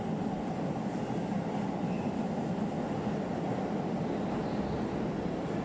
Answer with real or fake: real